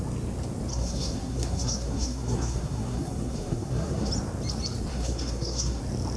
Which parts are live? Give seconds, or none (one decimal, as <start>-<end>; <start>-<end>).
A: 0.0-0.7; 4.1-4.9; 5.8-6.2

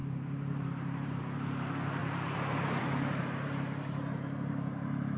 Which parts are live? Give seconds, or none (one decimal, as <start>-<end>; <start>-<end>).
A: 1.2-2.0

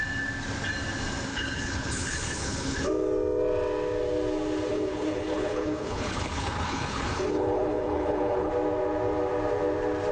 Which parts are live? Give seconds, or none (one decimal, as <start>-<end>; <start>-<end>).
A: 0.0-1.3; 2.9-4.7; 8.5-10.1

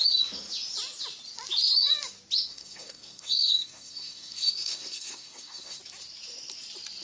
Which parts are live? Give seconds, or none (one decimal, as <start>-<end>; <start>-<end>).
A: 0.0-2.5; 5.8-7.0